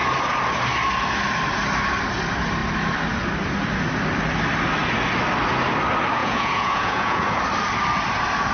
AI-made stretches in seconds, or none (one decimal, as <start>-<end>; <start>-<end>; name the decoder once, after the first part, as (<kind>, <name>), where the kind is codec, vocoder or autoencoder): 6.2-7.4 (vocoder, Vocos)